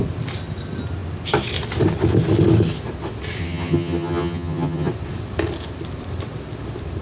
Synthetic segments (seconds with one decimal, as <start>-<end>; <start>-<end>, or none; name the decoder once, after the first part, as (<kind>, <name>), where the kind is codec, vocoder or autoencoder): 3.4-4.9 (vocoder, HiFi-GAN)

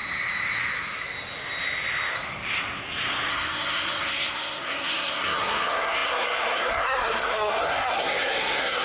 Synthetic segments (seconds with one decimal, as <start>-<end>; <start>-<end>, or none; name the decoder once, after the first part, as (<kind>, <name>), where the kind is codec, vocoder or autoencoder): 3.3-8.8 (codec, SNAC)